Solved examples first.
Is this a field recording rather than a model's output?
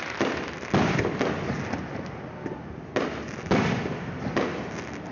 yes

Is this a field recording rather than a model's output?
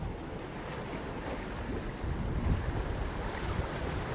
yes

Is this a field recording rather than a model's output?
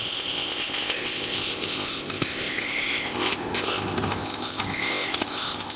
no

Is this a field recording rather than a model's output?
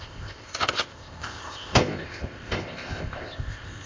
no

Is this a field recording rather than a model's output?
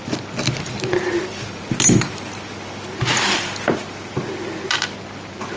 yes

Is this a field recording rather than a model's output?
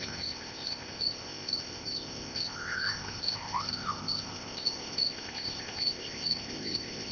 no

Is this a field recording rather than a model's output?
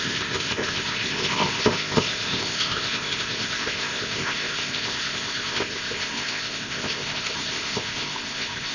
no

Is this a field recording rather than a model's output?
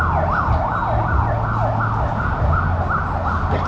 yes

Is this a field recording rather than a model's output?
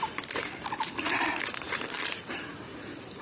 yes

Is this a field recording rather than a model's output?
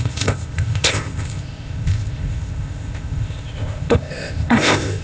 no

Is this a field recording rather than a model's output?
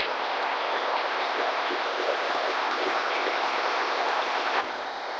no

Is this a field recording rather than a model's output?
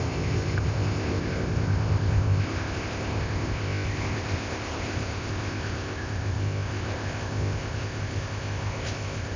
no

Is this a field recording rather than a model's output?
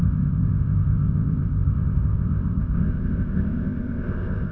no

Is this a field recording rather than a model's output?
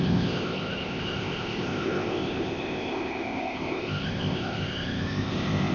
no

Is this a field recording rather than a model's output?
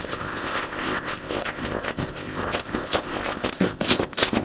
no